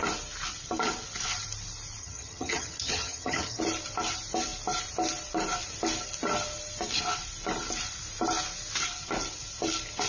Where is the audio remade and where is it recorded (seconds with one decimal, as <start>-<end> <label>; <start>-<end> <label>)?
0.0-2.0 recorded; 2.0-3.6 remade; 3.6-10.1 recorded